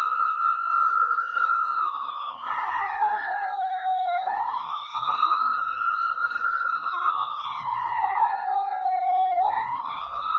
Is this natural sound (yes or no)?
no